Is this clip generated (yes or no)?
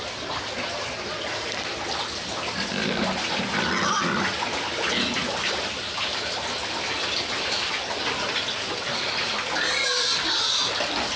no